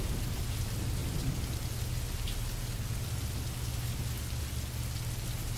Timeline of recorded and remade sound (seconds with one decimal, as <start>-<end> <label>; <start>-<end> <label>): 0.0-5.6 recorded

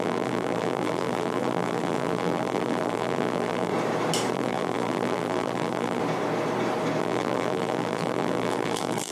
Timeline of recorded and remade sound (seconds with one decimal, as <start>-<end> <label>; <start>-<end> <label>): 0.0-3.7 remade; 3.7-4.3 recorded; 4.3-6.0 remade; 6.0-7.0 recorded; 7.0-9.1 remade

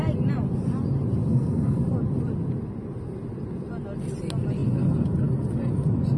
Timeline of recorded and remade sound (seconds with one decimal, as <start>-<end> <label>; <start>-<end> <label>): 0.0-1.3 recorded; 1.3-1.8 remade; 1.8-6.2 recorded

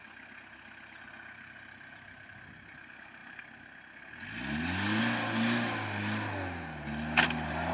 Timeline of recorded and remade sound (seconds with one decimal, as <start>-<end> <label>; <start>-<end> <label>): 0.0-7.7 recorded

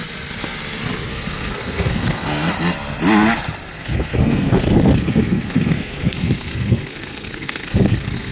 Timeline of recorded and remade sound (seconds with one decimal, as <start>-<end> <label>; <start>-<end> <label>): 0.0-1.1 recorded; 1.1-2.5 remade; 2.5-3.7 recorded; 3.7-8.3 remade

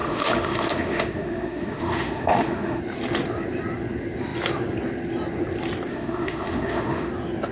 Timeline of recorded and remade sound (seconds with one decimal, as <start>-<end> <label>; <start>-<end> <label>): 0.0-2.8 remade; 2.8-5.9 recorded; 5.9-7.1 remade; 7.1-7.5 recorded